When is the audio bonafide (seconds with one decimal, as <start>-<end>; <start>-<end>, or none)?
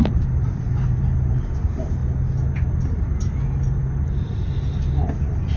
2.0-5.6